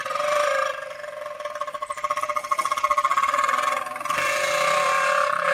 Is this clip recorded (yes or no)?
no